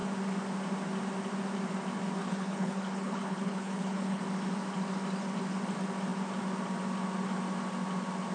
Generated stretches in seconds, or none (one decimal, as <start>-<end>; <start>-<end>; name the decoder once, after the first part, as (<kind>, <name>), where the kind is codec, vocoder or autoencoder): 2.2-4.2 (codec, HILCodec)